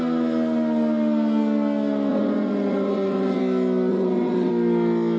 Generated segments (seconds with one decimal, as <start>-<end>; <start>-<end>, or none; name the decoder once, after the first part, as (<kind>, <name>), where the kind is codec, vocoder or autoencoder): 2.1-3.4 (vocoder, WaveNeXt); 3.9-4.5

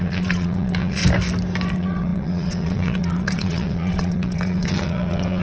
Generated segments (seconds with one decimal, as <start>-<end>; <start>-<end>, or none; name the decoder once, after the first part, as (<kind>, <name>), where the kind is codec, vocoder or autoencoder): 0.0-1.0 (vocoder, WaveNeXt); 1.7-5.4

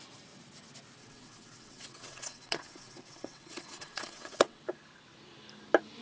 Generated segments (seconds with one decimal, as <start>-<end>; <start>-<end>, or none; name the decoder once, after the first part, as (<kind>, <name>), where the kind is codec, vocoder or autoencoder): 1.0-4.6 (vocoder, WaveNeXt)

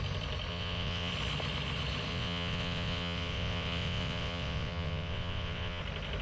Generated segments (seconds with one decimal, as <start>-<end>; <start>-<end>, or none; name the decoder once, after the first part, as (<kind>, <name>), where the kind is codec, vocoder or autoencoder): 0.5-1.1 (vocoder, WaveNeXt); 2.1-5.8

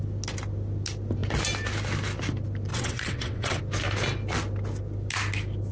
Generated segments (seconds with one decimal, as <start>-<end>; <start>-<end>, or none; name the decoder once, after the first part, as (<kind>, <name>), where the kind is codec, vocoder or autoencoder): 2.7-3.6 (vocoder, WaveNeXt)

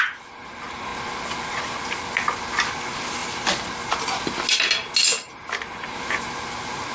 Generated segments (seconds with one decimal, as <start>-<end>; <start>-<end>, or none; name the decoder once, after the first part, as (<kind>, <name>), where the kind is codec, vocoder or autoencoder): none

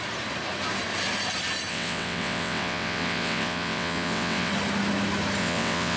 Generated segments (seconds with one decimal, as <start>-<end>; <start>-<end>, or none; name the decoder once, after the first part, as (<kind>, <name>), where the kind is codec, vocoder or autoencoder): 1.7-4.5 (vocoder, WaveNeXt); 5.4-6.0

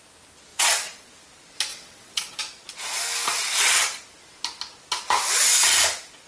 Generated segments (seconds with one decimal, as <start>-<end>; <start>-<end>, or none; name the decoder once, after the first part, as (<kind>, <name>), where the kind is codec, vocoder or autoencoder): 0.5-1.1 (vocoder, WaveNeXt); 1.7-2.4